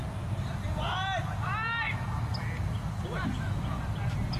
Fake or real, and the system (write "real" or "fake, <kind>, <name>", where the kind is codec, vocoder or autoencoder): real